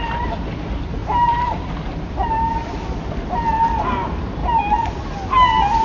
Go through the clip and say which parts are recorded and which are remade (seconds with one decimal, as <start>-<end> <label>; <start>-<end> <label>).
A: 0.0-5.8 recorded